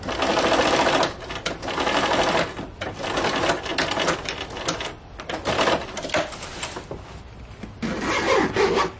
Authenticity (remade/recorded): recorded